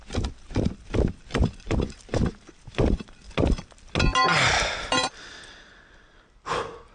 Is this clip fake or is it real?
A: real